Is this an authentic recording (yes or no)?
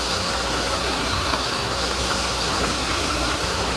no